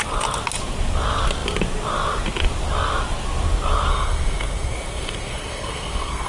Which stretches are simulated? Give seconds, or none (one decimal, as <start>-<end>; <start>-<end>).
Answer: 3.9-6.3